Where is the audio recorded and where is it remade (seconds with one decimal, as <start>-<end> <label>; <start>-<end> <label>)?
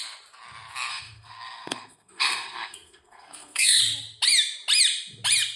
0.0-0.9 recorded; 0.9-3.8 remade; 3.8-5.6 recorded